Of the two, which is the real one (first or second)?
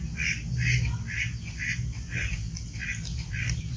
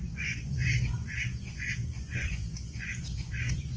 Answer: first